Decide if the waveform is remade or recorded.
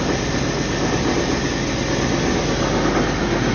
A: recorded